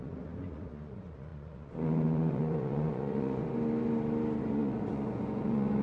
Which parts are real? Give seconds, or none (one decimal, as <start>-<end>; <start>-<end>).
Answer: 3.4-4.4